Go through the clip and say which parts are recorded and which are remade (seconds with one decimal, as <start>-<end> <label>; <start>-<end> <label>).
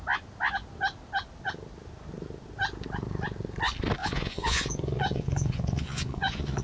0.0-4.0 recorded; 4.0-6.6 remade